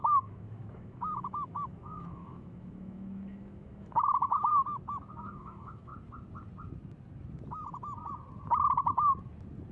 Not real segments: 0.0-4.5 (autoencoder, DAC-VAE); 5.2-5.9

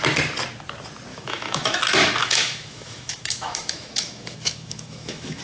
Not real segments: 1.1-1.8 (autoencoder, DAC-VAE); 2.2-5.4

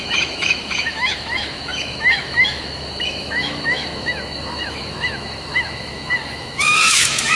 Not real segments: 0.0-7.4 (autoencoder, DAC-VAE)

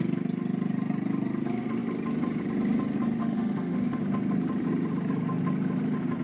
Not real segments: 3.2-4.0 (autoencoder, DAC-VAE)